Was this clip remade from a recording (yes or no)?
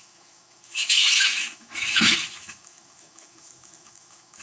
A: yes